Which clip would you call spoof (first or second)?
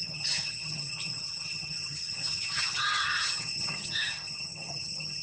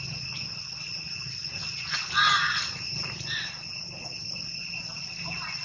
first